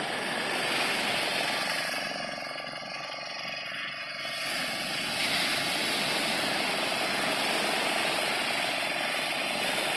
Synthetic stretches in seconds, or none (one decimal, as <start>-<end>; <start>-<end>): 2.8-4.6